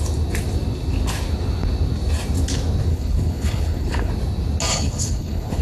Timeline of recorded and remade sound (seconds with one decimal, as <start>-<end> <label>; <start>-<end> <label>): 0.0-2.9 recorded; 2.9-4.1 remade; 4.1-4.7 recorded; 4.7-5.6 remade